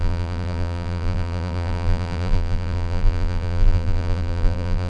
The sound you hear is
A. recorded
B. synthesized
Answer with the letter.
B